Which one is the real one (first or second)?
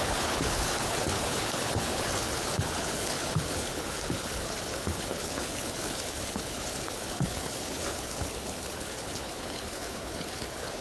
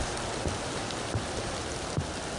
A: second